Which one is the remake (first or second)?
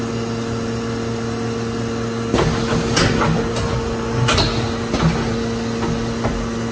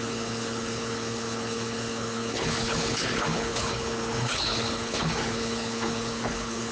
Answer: second